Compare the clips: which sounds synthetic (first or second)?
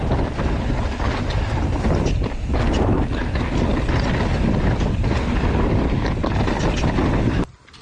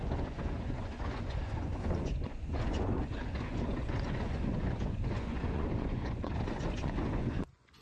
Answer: second